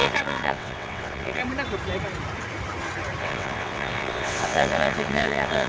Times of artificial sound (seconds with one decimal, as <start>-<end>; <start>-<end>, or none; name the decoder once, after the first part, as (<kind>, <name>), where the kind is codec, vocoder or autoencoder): 0.0-1.4 (vocoder, WaveNeXt); 3.2-5.7